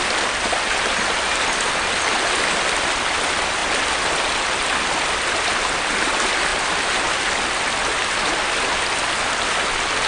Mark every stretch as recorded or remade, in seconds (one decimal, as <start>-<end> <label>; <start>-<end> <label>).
0.0-10.1 recorded